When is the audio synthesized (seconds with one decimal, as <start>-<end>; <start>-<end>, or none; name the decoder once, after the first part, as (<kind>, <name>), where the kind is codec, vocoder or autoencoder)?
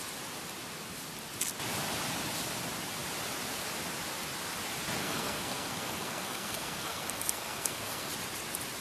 5.0-8.1 (codec, SNAC)